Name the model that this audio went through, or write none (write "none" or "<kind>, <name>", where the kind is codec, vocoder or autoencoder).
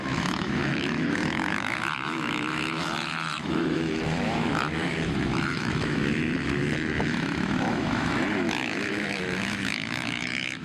autoencoder, DAC-VAE